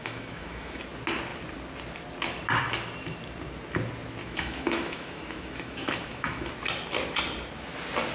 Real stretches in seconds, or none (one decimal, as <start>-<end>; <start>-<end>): 0.8-4.2; 6.5-8.1